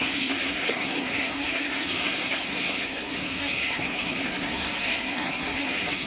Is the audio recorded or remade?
remade